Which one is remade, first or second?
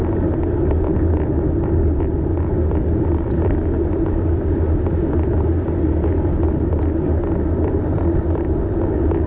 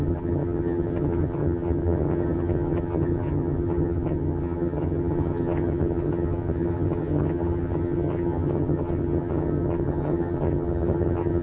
second